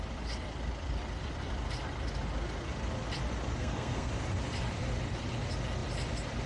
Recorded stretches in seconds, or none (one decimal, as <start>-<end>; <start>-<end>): 0.0-3.6; 4.1-6.5